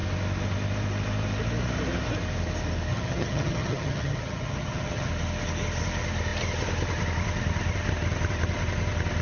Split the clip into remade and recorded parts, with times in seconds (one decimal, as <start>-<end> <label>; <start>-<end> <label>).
0.0-2.9 recorded; 2.9-5.1 remade; 5.1-9.2 recorded